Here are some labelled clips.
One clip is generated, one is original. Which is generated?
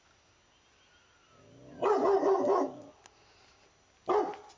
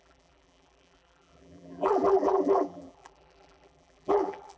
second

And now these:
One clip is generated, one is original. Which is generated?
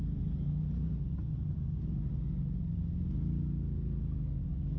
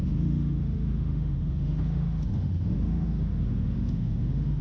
second